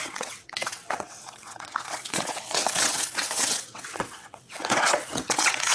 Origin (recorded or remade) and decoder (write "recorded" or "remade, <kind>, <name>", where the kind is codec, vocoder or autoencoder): remade, vocoder, WaveNeXt